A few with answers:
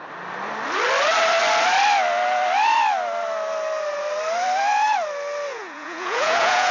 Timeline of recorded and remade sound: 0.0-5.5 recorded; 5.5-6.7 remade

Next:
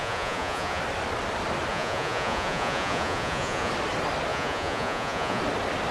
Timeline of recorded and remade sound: 0.0-0.8 remade; 0.8-1.7 recorded; 1.7-3.7 remade; 3.7-4.3 recorded; 4.3-5.4 remade; 5.4-5.9 recorded